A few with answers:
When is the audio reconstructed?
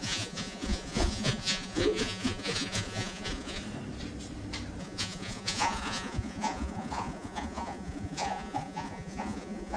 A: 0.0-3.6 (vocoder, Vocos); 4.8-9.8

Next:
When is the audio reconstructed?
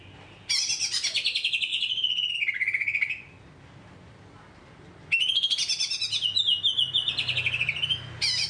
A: 1.7-2.3 (vocoder, Vocos)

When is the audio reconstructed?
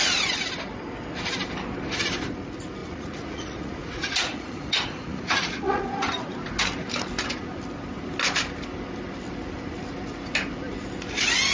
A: 2.8-5.8 (vocoder, Vocos)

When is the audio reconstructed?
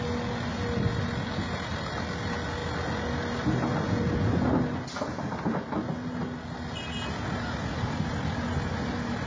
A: none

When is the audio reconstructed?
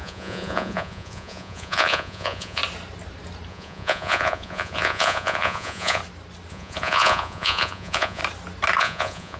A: 0.0-2.6 (vocoder, Vocos); 3.5-6.0; 6.5-8.2; 8.8-9.4